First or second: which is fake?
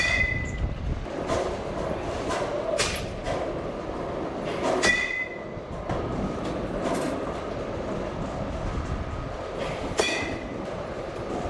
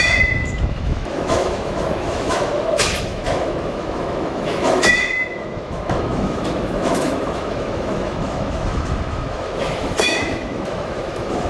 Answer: second